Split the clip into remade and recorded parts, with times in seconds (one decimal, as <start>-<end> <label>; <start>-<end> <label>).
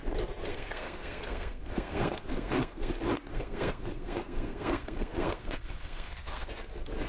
0.0-0.5 recorded; 0.5-2.9 remade; 2.9-3.3 recorded; 3.3-6.5 remade; 6.5-7.1 recorded